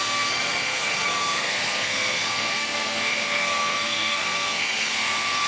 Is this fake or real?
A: fake